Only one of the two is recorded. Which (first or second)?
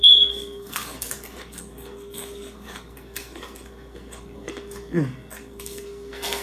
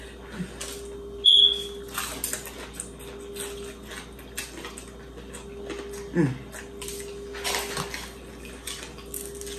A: second